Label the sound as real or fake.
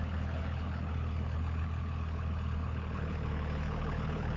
fake